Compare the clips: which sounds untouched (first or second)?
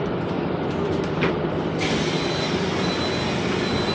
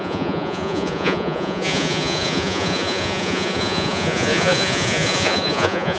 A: first